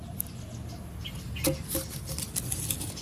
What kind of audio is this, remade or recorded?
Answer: recorded